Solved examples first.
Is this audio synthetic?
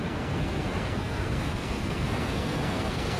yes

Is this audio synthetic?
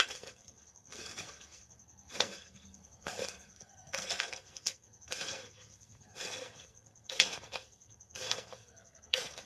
yes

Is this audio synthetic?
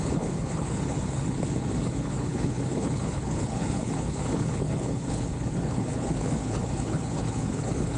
yes